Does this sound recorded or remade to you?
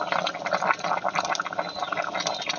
recorded